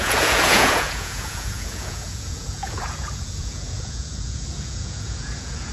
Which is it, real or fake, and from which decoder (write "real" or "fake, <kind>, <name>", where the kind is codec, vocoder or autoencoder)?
fake, vocoder, Vocos